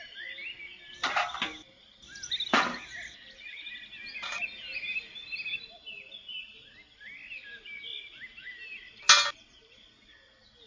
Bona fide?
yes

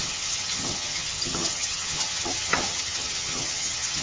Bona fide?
no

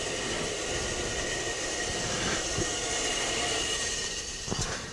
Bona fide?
yes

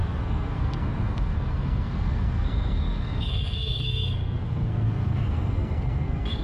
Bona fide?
no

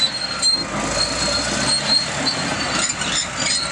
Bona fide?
yes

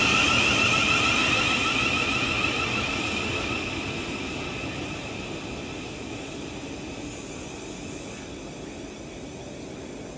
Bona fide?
yes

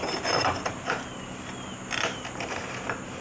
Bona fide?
yes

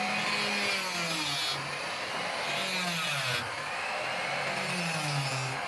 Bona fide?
yes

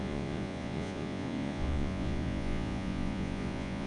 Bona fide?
no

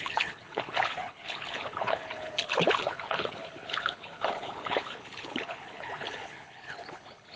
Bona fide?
no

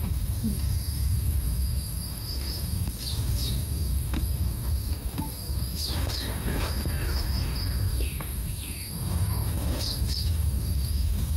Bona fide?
no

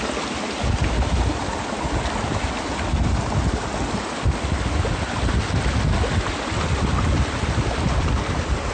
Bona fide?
yes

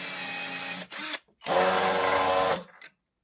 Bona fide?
yes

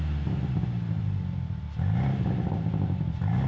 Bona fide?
yes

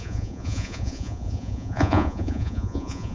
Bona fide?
no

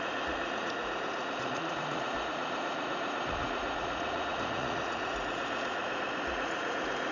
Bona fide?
no